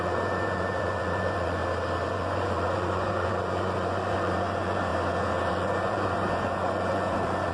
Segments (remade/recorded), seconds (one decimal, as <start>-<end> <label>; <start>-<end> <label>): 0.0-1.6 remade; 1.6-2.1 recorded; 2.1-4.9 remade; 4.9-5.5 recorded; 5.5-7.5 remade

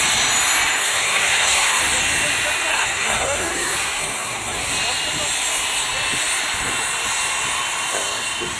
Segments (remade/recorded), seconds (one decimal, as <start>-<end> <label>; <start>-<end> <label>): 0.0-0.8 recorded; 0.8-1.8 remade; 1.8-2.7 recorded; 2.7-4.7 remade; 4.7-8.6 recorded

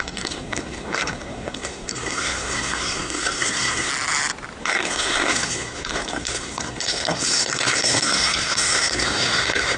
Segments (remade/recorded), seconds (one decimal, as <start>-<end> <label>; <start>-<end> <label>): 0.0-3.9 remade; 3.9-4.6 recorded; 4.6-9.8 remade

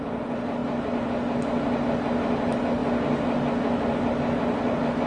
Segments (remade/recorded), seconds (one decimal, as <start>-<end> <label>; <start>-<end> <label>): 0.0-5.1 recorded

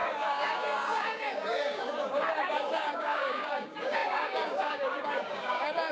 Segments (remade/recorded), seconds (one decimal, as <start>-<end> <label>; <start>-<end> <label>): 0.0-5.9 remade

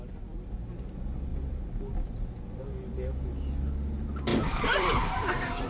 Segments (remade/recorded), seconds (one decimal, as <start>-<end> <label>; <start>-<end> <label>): 0.0-1.3 recorded; 1.3-2.1 remade; 2.1-4.3 recorded; 4.3-5.3 remade; 5.3-5.7 recorded